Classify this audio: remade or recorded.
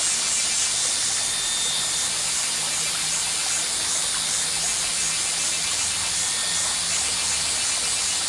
recorded